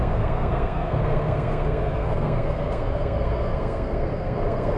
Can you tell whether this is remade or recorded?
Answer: remade